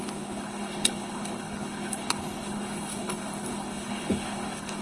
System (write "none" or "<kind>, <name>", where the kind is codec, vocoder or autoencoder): codec, HILCodec